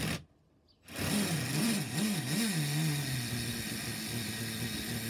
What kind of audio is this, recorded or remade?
recorded